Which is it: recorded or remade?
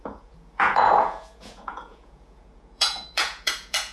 remade